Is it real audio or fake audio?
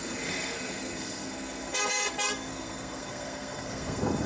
fake